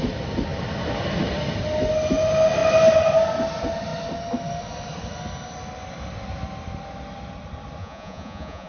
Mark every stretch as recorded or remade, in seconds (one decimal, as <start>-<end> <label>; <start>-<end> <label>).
0.0-7.8 recorded; 7.8-8.7 remade